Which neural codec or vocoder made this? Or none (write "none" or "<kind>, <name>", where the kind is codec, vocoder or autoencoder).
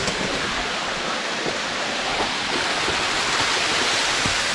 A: none